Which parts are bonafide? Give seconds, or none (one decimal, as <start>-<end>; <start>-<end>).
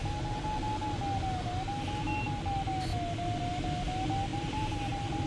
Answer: 0.0-4.3